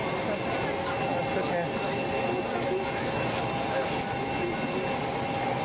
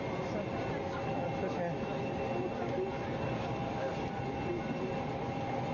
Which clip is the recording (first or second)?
first